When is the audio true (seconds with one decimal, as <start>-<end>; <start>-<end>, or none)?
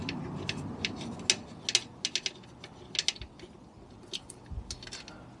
0.0-5.4